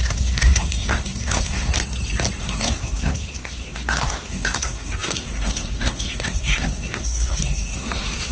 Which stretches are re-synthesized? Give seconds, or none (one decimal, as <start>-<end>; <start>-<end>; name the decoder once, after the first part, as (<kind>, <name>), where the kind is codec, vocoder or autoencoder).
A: 0.0-1.7 (codec, SNAC); 2.4-8.3